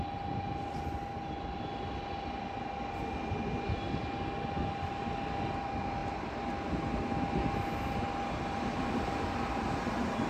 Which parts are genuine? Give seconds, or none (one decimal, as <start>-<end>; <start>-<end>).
0.0-10.3